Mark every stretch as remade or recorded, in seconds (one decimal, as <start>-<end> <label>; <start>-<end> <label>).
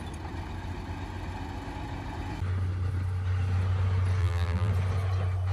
0.0-4.2 recorded; 4.2-4.7 remade; 4.7-5.5 recorded